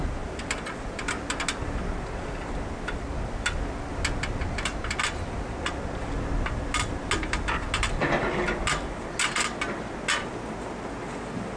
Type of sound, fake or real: real